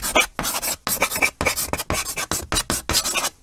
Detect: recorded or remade recorded